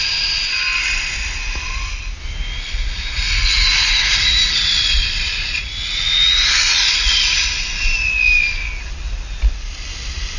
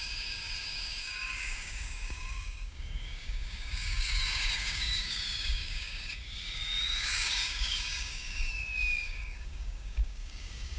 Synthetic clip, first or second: second